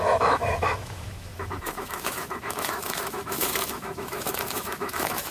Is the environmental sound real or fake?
fake